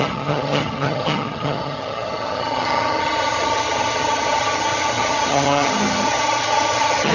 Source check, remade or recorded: remade